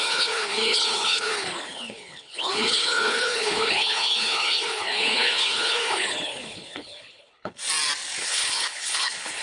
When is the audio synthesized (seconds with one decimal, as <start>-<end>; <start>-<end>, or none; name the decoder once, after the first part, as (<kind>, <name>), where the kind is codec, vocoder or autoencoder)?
0.0-7.6 (codec, HILCodec); 8.2-9.4